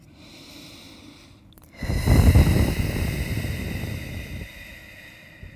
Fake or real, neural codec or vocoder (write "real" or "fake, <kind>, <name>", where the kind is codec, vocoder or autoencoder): real